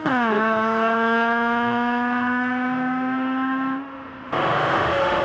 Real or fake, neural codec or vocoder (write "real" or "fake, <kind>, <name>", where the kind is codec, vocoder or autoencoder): fake, autoencoder, DAC-VAE